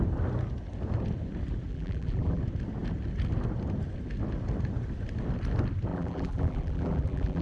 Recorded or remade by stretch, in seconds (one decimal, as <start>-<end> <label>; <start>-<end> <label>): 0.0-1.7 recorded; 1.7-2.4 remade; 2.4-5.9 recorded; 5.9-7.4 remade